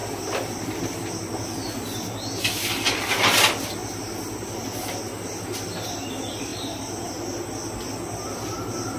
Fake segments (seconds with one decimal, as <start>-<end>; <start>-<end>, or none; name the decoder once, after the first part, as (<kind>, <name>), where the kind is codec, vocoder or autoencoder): none